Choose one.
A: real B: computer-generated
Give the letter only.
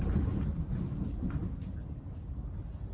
A